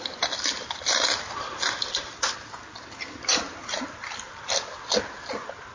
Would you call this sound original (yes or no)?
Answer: yes